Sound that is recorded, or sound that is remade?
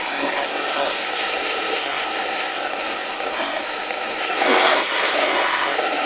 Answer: remade